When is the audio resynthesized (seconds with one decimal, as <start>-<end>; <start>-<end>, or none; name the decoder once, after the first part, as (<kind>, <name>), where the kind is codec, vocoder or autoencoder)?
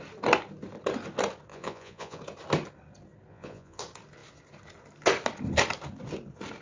1.5-2.2 (vocoder, Vocos); 3.3-3.8